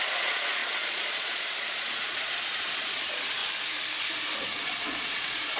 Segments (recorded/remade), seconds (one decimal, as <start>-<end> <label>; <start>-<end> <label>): 0.0-3.4 remade; 3.4-4.4 recorded; 4.4-5.6 remade